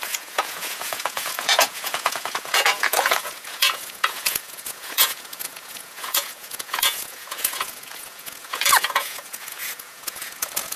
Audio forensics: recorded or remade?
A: remade